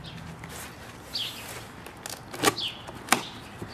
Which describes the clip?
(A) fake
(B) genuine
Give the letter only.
B